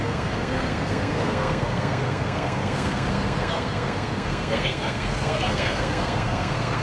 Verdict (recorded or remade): remade